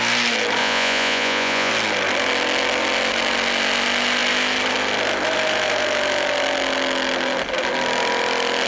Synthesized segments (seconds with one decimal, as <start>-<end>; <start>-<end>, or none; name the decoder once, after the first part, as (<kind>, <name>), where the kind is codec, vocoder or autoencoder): 0.6-1.7 (vocoder, Vocos)